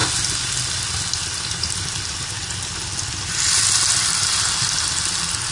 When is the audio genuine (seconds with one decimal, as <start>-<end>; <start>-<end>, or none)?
0.0-5.5